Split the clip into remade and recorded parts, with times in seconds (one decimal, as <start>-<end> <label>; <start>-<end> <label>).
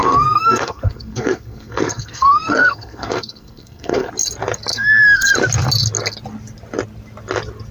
0.0-4.1 remade; 4.1-4.7 recorded; 4.7-5.3 remade; 5.3-7.7 recorded